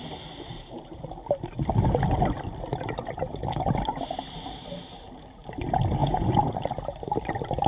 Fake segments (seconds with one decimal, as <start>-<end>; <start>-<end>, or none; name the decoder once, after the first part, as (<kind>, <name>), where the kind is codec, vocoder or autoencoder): 6.0-6.5 (vocoder, Vocos)